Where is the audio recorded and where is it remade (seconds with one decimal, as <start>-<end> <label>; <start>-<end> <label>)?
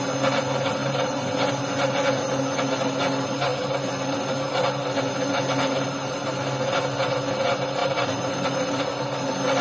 0.0-0.8 recorded; 0.8-1.5 remade; 1.5-7.8 recorded; 7.8-8.8 remade; 8.8-9.6 recorded